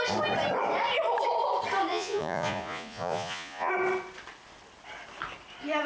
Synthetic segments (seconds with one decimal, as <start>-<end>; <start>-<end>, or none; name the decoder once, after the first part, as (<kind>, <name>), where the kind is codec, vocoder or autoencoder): 1.9-3.7 (vocoder, Vocos)